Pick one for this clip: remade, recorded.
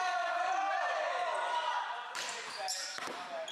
recorded